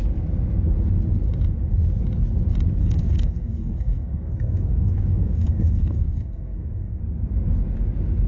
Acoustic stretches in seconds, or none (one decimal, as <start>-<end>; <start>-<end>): 0.0-2.8; 7.0-8.3